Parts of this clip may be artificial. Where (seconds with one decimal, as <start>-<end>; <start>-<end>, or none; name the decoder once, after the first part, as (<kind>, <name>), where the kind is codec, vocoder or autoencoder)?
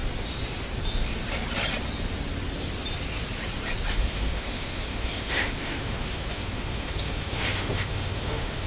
3.9-8.7 (autoencoder, DAC-VAE)